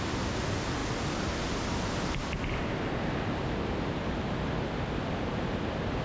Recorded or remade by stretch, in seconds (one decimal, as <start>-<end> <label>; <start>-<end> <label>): 0.0-6.0 recorded